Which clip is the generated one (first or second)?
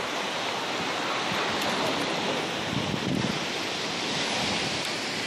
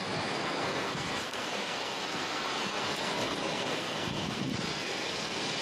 second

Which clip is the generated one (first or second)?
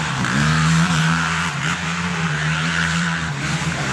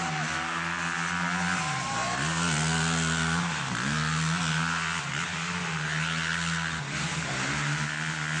first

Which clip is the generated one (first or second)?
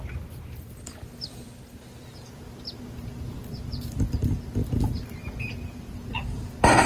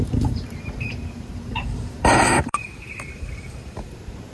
second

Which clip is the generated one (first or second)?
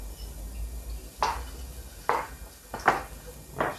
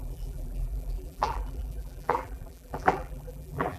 second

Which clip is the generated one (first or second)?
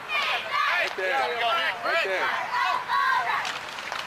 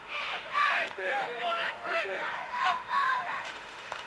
second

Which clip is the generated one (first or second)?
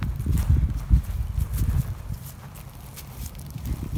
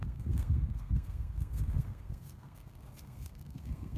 second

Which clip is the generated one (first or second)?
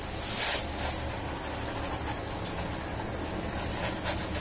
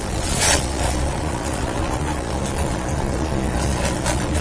second